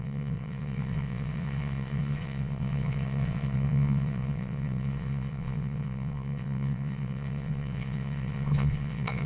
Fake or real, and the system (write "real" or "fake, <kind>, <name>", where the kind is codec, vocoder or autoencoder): fake, vocoder, WaveNeXt